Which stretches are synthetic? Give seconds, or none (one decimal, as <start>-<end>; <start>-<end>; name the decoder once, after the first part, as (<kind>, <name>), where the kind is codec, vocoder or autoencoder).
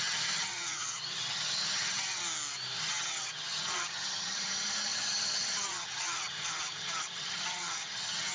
0.0-2.2 (vocoder, HiFi-GAN); 2.8-8.3